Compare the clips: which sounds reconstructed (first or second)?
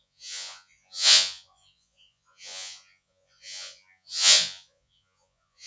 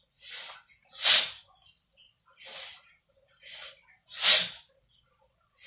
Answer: first